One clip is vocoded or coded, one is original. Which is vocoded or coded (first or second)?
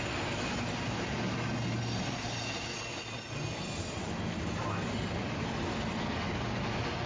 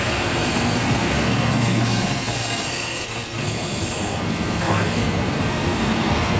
second